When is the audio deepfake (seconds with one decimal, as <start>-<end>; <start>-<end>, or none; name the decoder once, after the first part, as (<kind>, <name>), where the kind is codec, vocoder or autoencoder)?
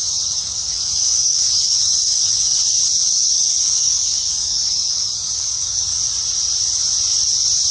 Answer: 0.0-2.5 (codec, DAC); 3.1-5.9